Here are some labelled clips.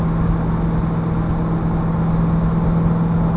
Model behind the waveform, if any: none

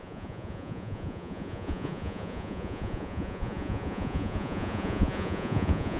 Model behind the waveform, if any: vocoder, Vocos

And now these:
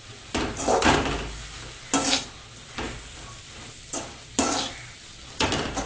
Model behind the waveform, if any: none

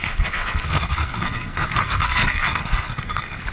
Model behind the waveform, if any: codec, SNAC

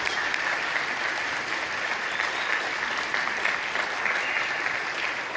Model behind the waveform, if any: none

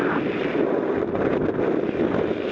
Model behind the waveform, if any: vocoder, BigVGAN v2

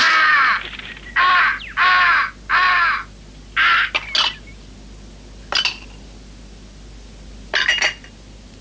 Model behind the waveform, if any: none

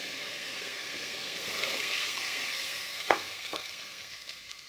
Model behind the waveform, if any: codec, SNAC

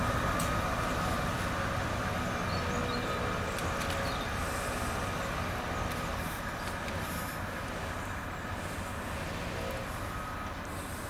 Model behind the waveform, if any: none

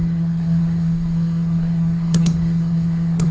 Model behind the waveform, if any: codec, SNAC